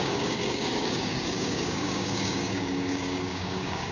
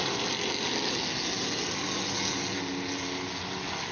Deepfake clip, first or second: first